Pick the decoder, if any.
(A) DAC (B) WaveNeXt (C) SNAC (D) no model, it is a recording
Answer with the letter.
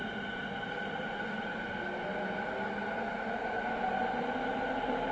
D